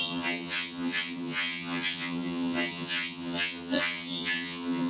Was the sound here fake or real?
fake